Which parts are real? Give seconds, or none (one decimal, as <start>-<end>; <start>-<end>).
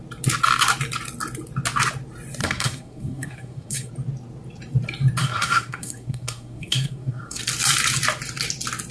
0.0-2.4; 3.9-5.2; 7.4-8.9